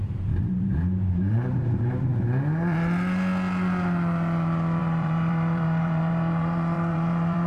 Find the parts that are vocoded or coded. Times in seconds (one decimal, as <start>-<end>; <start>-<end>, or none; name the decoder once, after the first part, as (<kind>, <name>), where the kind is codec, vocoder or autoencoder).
0.0-2.1 (vocoder, BigVGAN v2); 4.8-7.5